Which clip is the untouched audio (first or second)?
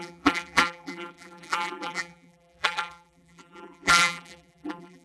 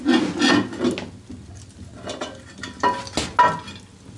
second